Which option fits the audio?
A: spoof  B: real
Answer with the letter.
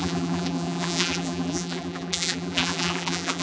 A